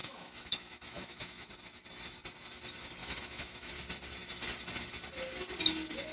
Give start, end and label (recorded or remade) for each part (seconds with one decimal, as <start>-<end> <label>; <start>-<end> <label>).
0.0-1.5 remade; 1.5-3.0 recorded; 3.0-3.7 remade; 3.7-6.1 recorded